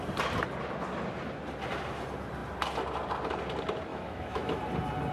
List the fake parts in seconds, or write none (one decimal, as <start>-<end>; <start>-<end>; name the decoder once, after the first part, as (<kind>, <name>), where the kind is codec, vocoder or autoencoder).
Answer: 3.9-4.6 (autoencoder, DAC-VAE)